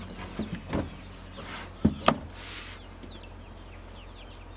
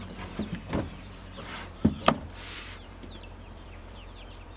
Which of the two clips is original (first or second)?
first